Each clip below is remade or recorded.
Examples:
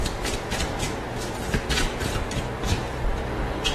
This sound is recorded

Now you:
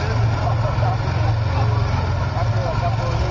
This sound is recorded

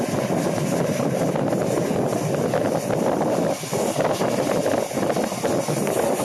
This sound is recorded